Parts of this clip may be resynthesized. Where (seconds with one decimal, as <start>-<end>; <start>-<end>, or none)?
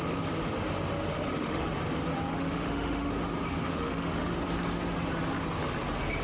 1.1-1.6; 2.3-3.1; 3.6-4.3